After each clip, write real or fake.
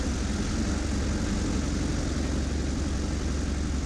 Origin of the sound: real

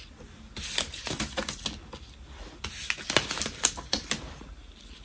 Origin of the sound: real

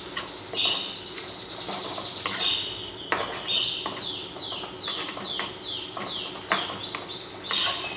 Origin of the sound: real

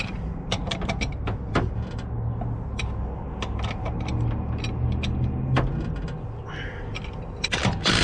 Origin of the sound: real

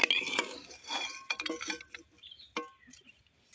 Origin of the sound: real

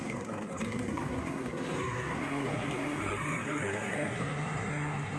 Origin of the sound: fake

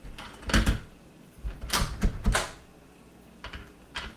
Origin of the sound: real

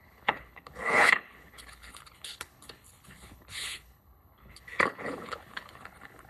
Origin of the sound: fake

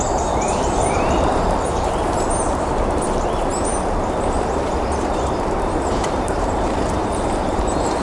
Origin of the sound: fake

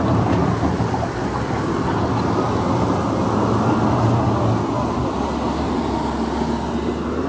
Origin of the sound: real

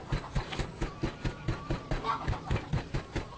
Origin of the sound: real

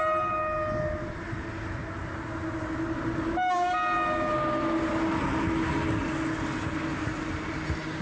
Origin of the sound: real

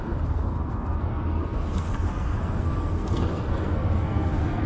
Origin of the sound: fake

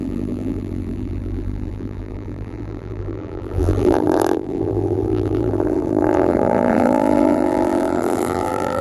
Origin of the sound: fake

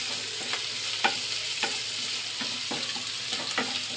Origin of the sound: real